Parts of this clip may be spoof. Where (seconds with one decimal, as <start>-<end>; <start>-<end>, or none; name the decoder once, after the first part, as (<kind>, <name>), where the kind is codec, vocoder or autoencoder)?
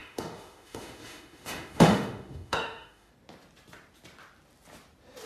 0.0-3.1 (autoencoder, DAC-VAE)